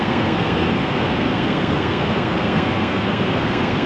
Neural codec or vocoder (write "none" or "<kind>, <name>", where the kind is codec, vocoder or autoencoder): codec, SNAC